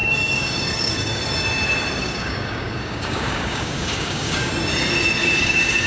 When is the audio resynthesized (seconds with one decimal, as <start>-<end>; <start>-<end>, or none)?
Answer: 0.0-1.2; 2.0-4.5; 5.2-5.9